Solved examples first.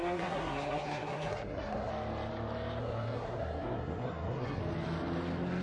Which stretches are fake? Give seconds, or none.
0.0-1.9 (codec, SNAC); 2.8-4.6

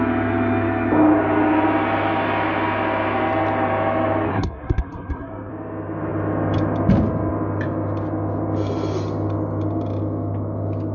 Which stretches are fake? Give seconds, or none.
4.3-5.5 (codec, SNAC)

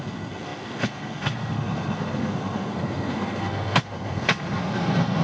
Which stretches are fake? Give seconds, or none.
0.0-5.2 (codec, SNAC)